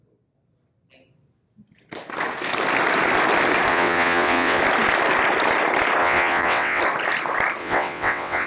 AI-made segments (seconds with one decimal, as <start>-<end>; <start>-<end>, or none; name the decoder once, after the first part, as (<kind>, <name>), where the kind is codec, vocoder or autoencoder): 3.7-4.6 (vocoder, WaveNeXt); 6.0-6.8; 7.6-8.5